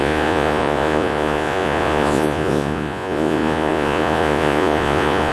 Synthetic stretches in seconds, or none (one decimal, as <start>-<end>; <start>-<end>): 0.0-5.3